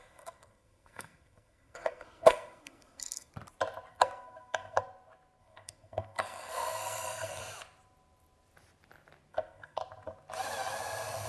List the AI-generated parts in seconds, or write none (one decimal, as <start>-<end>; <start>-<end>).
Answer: 0.0-3.3; 3.9-4.8; 5.4-7.4; 9.3-9.8